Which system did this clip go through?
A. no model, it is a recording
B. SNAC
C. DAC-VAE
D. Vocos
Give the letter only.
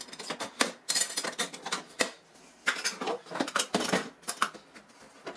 A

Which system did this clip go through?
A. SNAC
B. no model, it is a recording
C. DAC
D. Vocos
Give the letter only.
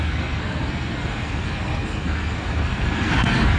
A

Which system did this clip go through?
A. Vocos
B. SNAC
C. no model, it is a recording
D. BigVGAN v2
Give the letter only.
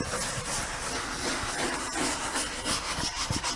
C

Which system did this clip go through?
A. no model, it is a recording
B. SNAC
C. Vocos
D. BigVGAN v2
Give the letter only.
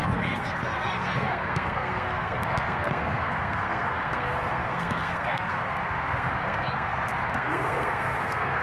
B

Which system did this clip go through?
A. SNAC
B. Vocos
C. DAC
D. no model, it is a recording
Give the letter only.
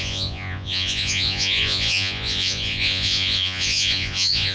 B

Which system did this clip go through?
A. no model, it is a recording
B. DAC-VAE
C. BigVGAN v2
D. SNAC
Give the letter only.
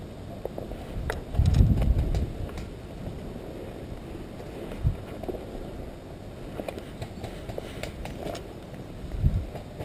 A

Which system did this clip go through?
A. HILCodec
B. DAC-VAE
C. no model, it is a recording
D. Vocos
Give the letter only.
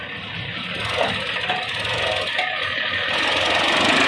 C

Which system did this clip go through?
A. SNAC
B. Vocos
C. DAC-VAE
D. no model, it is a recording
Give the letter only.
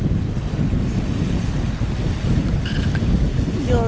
D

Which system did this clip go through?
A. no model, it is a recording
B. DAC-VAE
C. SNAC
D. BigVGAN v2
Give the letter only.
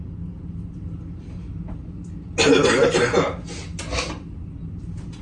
A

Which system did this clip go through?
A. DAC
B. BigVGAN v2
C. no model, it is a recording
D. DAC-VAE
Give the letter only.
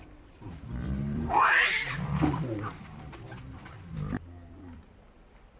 B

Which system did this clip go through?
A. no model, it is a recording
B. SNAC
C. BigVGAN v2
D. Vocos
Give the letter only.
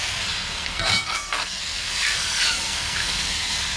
B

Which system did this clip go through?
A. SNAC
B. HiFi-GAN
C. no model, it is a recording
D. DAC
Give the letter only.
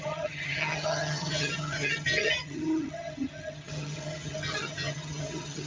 B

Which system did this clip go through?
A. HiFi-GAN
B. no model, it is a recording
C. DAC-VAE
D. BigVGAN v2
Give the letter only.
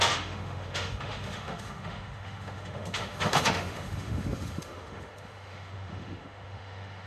C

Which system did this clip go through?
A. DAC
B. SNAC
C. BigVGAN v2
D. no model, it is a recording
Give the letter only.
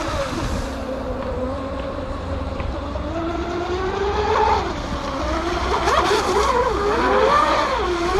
D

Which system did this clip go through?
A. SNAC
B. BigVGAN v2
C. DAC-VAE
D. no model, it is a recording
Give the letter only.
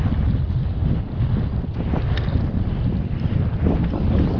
D